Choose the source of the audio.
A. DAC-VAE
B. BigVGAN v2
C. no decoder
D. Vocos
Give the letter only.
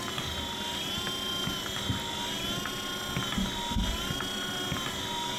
C